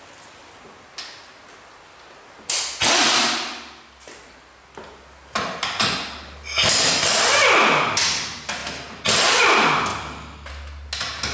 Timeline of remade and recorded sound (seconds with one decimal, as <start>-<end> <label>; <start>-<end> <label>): 0.0-11.3 recorded